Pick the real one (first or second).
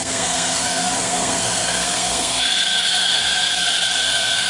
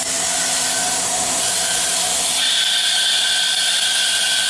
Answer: second